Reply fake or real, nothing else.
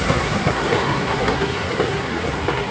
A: fake